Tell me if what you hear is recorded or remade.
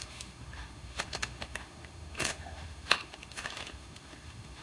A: remade